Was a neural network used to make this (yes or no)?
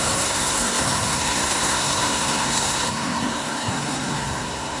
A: yes